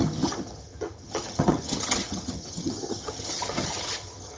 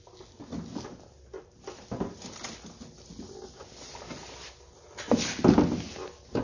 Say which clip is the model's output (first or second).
first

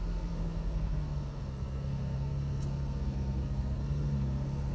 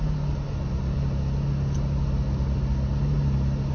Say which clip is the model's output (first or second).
first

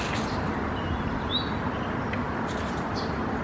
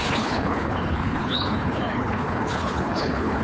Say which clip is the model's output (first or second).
second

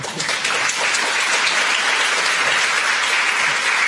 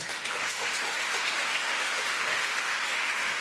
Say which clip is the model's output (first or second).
second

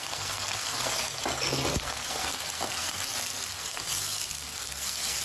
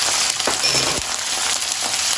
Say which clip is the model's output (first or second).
first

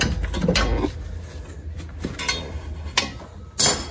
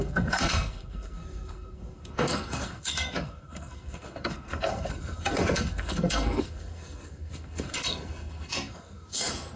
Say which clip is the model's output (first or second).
second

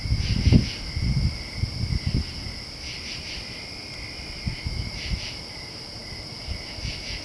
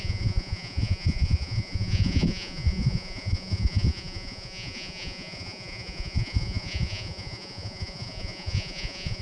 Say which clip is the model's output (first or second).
second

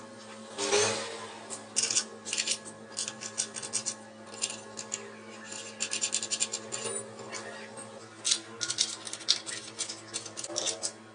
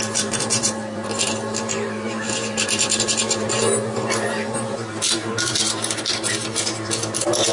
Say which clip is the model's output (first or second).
second